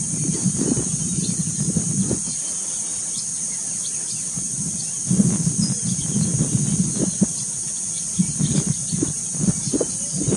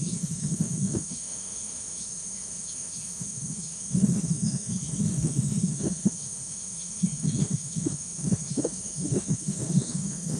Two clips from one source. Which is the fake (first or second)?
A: second